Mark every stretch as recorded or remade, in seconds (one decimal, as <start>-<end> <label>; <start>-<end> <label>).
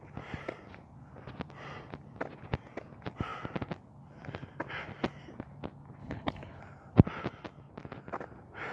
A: 0.0-6.0 recorded; 6.0-6.6 remade; 6.6-8.7 recorded